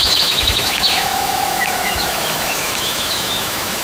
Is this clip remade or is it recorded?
remade